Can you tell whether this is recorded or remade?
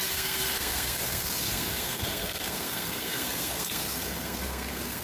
remade